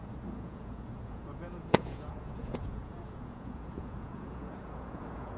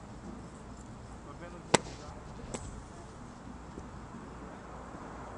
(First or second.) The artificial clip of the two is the first